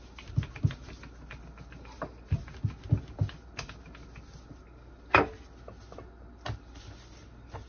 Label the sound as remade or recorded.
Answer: recorded